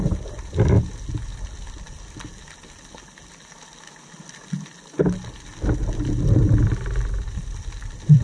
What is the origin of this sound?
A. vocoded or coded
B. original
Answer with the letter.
B